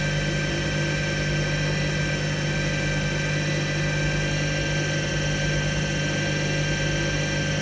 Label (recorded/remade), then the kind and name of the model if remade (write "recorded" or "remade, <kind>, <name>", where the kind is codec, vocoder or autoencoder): recorded